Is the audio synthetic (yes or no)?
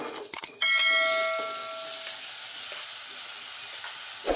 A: no